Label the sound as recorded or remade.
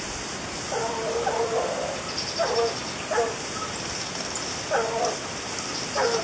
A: recorded